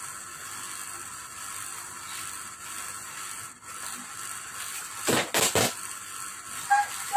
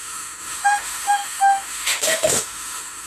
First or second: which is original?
first